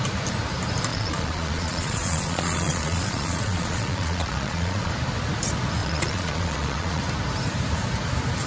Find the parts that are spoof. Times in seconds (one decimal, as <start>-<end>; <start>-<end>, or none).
0.9-4.9; 5.8-7.0